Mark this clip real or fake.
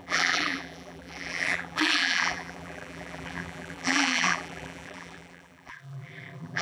fake